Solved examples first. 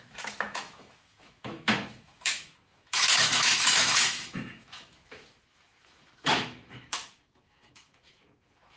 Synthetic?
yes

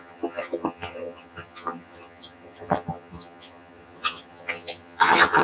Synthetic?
yes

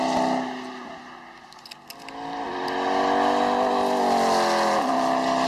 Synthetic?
no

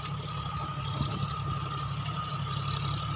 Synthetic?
no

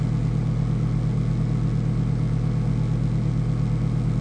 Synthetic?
no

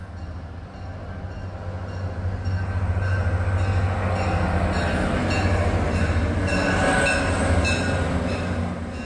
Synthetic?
no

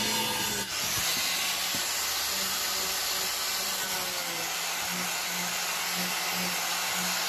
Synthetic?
no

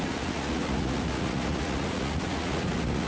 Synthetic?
yes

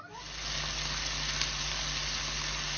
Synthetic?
no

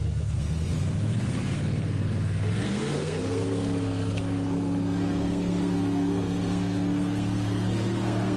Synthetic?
yes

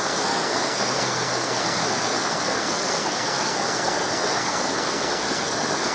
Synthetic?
yes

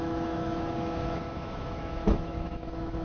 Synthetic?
yes